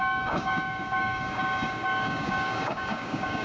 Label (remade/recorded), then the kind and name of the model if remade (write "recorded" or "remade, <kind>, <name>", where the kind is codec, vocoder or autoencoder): remade, codec, DAC